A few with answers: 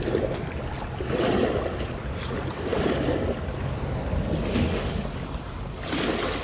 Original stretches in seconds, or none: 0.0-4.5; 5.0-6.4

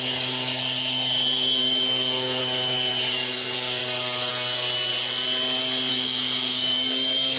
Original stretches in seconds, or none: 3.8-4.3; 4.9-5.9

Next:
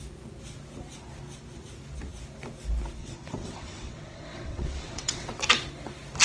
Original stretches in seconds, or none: 0.0-3.0; 5.4-6.2

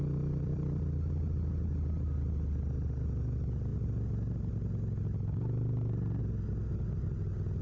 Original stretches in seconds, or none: 0.0-7.6

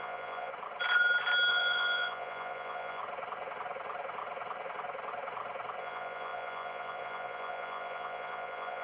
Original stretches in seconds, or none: 0.5-1.5; 3.0-5.8